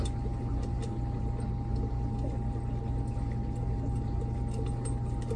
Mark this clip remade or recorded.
recorded